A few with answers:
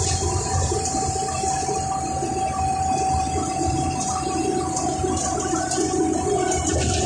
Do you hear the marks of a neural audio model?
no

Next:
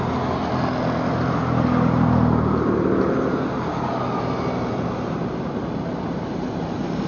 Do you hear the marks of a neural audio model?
no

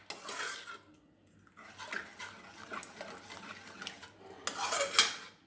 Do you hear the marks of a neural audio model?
no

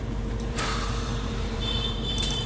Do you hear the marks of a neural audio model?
yes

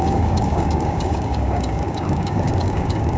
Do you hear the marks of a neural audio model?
yes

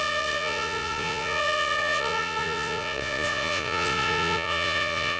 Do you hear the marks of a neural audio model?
yes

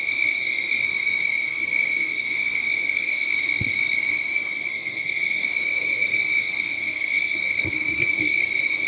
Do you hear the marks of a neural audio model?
yes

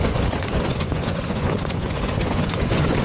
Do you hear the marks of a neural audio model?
yes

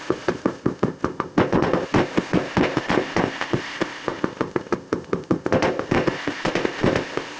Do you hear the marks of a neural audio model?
yes